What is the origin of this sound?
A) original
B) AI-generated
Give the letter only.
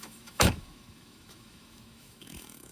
B